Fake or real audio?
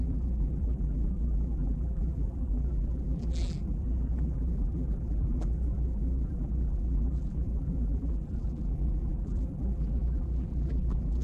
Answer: fake